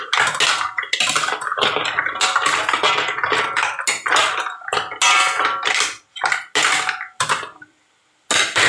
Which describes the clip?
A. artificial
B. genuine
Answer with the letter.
B